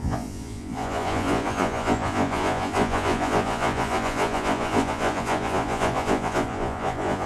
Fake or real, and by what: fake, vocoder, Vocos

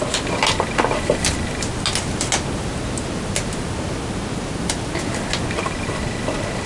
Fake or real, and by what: real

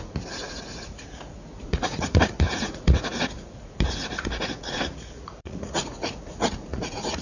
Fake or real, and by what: fake, vocoder, Vocos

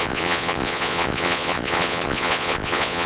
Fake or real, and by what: fake, vocoder, Vocos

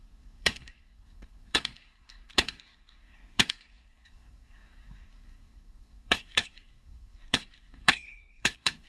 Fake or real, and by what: fake, codec, SNAC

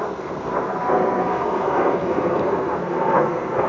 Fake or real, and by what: fake, codec, SNAC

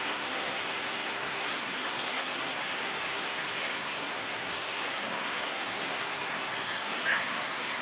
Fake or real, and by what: fake, codec, SNAC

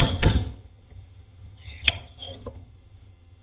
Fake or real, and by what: fake, vocoder, HiFi-GAN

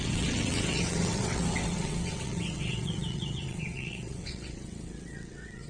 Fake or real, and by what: fake, vocoder, WaveNeXt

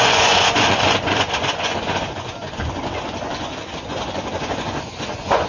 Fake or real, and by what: fake, vocoder, Vocos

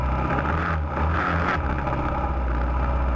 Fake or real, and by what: real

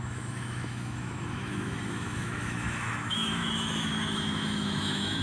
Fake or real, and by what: fake, autoencoder, DAC-VAE